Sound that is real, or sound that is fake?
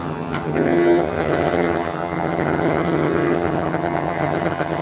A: fake